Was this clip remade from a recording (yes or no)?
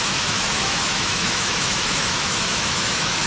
yes